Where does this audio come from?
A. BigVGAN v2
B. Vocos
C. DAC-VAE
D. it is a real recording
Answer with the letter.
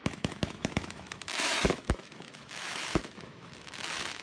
C